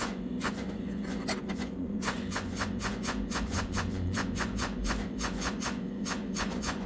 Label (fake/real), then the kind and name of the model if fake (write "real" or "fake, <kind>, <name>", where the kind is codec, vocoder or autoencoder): fake, vocoder, Vocos